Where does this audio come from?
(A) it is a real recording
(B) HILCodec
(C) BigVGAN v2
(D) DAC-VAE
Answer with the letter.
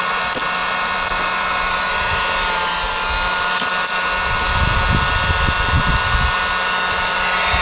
A